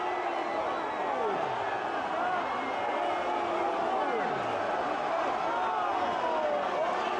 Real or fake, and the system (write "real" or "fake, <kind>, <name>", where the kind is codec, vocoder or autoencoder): real